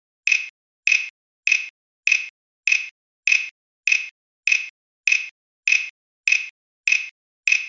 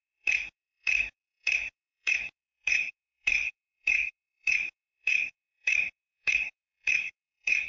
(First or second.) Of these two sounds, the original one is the first